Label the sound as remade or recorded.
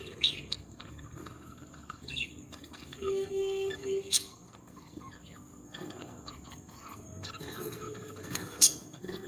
remade